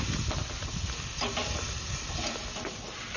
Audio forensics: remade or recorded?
recorded